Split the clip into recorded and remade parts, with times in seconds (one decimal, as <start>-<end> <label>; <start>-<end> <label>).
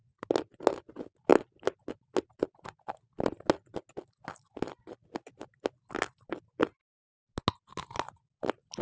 0.0-8.8 recorded